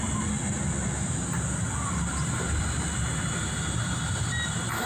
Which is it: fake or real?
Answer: real